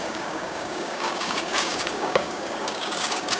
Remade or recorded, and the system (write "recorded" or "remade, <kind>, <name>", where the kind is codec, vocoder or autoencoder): remade, codec, DAC